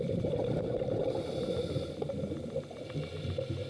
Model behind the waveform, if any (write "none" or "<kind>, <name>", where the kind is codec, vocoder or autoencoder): none